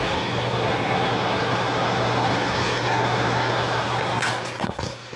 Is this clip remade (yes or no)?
yes